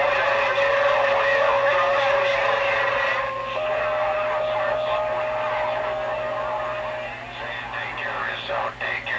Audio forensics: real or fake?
real